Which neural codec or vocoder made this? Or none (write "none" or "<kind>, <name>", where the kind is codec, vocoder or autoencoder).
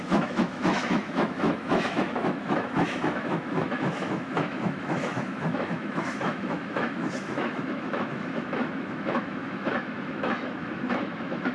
autoencoder, DAC-VAE